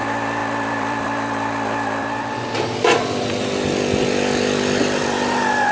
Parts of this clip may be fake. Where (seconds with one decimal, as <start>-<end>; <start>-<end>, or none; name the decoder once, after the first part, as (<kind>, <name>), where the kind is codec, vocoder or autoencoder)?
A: 0.4-1.5 (vocoder, BigVGAN v2); 2.0-5.7